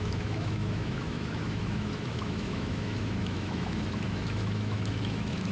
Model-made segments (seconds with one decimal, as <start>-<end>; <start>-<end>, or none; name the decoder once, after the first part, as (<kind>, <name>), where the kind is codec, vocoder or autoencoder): 0.0-5.5 (autoencoder, DAC-VAE)